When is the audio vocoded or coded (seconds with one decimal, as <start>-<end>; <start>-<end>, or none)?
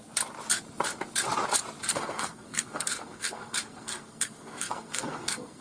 1.9-5.6